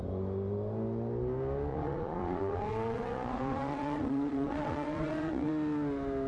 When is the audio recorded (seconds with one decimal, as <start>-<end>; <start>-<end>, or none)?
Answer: 0.0-1.7; 5.5-6.3